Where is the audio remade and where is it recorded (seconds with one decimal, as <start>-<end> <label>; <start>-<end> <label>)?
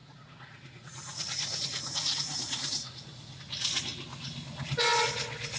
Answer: 0.0-3.4 remade; 3.4-5.6 recorded